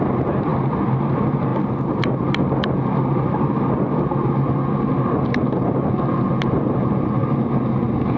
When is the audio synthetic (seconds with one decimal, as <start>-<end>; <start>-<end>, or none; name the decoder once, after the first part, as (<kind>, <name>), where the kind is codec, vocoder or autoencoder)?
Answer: none